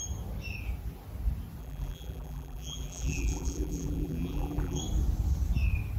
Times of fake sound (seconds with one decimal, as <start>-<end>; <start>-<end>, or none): 1.6-4.8